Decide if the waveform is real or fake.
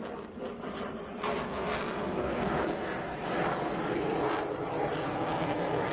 real